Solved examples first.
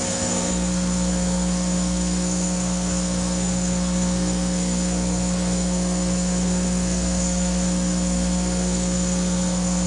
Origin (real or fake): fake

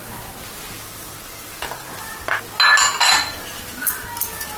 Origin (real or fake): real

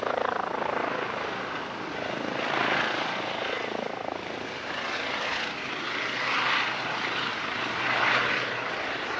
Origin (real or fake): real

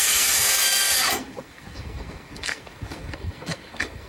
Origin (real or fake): fake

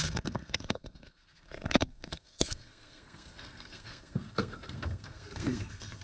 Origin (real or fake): fake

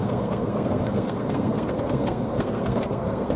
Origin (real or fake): fake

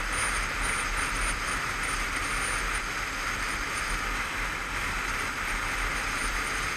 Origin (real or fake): real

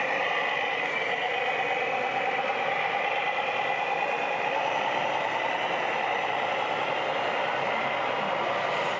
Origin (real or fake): real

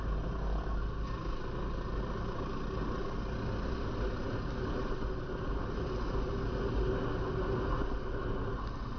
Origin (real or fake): real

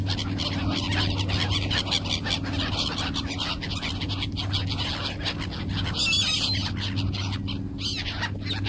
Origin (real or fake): real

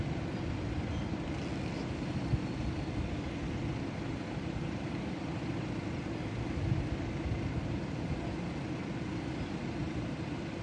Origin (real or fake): real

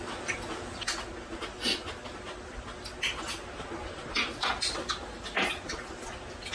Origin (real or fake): real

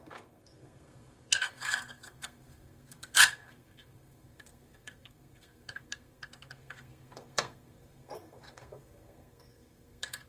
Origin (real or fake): fake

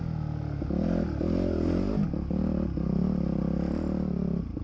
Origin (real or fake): real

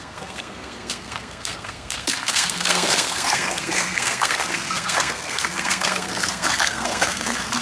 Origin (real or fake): fake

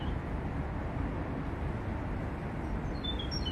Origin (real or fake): real